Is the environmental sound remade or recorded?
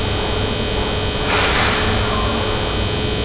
recorded